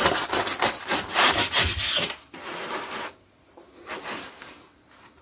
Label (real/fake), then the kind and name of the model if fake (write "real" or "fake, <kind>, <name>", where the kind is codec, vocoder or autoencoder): real